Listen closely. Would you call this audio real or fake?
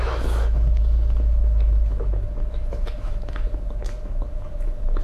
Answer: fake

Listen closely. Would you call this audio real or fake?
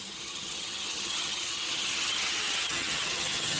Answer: fake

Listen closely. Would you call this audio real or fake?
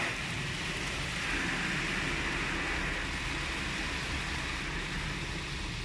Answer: real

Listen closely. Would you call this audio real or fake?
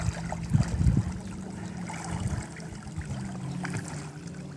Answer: real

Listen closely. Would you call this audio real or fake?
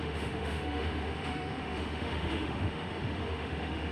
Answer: fake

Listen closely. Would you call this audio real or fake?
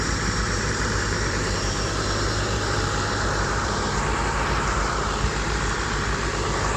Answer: fake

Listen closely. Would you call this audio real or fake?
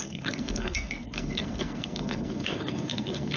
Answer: fake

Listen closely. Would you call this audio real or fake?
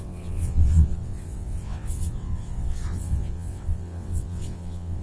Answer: fake